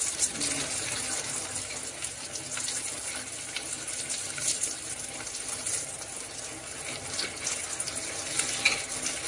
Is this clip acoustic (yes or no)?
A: yes